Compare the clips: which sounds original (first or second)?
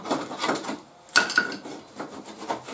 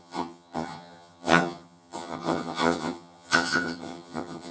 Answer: first